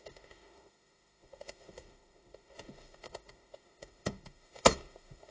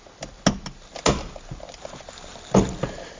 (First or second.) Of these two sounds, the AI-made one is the first